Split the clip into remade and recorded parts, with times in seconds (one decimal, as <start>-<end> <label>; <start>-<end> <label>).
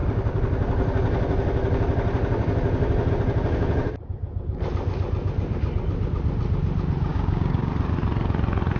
0.0-7.1 recorded; 7.1-7.7 remade; 7.7-8.8 recorded